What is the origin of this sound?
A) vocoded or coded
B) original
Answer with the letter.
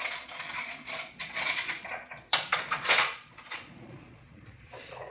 A